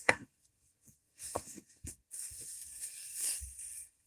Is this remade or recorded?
remade